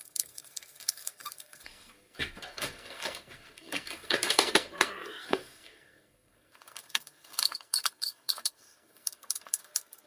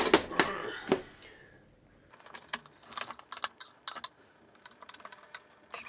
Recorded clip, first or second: second